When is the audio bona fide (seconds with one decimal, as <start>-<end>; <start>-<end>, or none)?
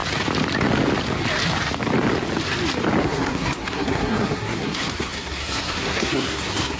0.0-3.0